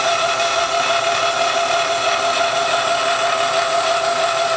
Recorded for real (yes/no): yes